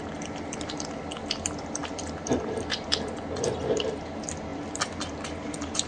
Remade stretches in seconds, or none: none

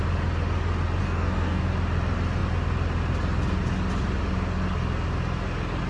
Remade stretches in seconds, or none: 1.0-1.6 (codec, DAC)